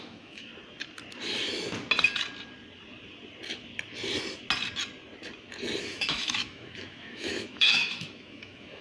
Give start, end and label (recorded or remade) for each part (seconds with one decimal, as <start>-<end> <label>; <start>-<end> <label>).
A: 0.0-0.5 remade; 0.5-5.8 recorded; 5.8-8.8 remade